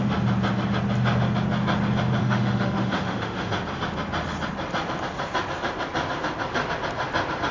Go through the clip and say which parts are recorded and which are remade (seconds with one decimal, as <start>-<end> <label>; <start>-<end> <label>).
0.0-2.2 recorded; 2.2-3.5 remade; 3.5-7.5 recorded